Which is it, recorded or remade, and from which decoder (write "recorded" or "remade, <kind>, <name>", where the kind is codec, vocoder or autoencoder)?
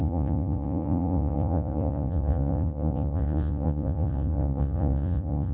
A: remade, vocoder, Vocos